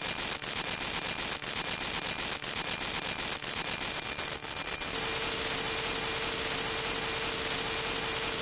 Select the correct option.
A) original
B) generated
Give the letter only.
A